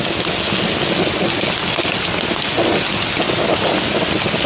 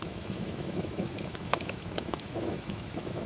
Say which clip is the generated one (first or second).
second